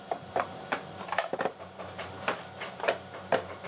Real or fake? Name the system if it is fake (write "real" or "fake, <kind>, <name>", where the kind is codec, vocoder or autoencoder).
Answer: fake, vocoder, BigVGAN v2